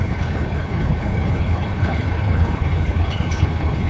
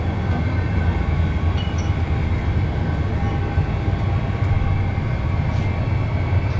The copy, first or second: first